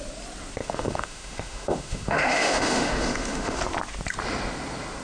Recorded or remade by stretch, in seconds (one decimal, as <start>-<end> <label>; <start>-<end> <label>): 0.0-0.6 recorded; 0.6-3.6 remade; 3.6-5.0 recorded